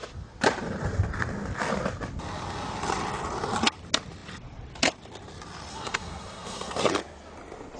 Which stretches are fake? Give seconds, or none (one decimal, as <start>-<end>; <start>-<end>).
5.7-6.9